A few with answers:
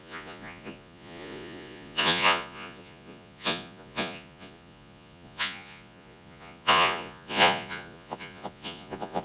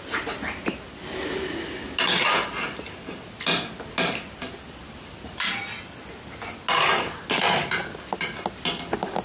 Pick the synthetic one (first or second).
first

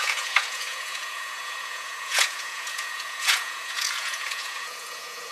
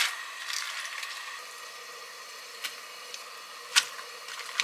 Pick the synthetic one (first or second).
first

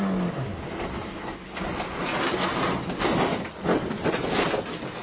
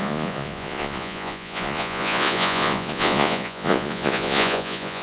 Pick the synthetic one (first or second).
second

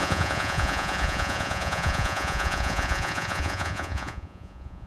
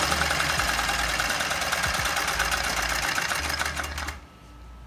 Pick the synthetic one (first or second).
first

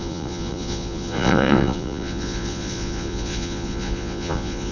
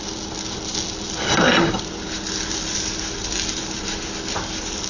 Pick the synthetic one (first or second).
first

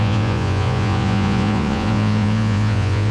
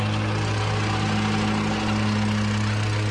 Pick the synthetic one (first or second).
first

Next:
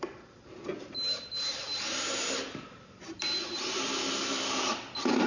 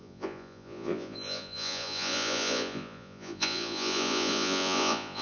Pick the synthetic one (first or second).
second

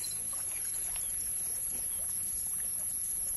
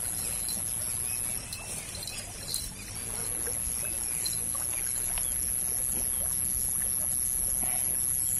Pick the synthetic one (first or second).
first